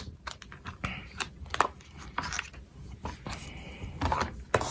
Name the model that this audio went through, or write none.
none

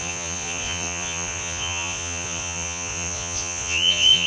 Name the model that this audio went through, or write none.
vocoder, Vocos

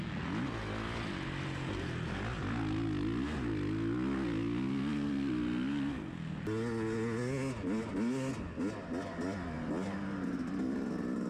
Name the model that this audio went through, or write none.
none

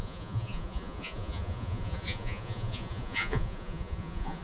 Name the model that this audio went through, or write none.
vocoder, Vocos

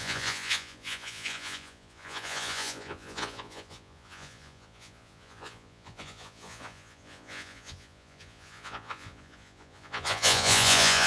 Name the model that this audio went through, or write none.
vocoder, Vocos